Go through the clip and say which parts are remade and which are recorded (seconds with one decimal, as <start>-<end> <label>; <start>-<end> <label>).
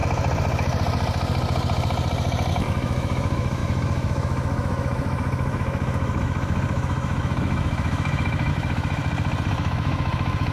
0.0-2.5 recorded; 2.5-9.0 remade; 9.0-9.5 recorded; 9.5-10.5 remade